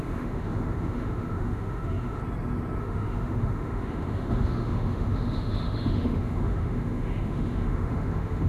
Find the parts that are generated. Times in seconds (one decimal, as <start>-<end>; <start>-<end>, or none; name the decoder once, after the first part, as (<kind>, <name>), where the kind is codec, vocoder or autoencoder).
0.0-2.2 (autoencoder, DAC-VAE); 2.8-8.5